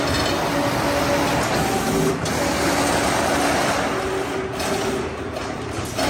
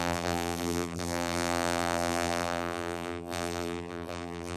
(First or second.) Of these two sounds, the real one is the first